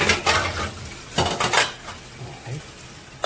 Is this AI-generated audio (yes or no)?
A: no